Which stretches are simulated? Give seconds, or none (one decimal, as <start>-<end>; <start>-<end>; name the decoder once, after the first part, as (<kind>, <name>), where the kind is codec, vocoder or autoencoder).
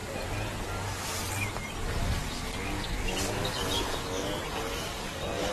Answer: 2.0-5.5 (codec, DAC)